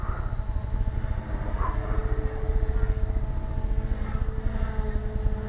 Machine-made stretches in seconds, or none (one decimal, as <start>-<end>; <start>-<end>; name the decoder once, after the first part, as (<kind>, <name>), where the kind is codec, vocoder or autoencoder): none